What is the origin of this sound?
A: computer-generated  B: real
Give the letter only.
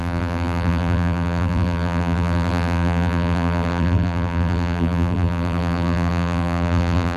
A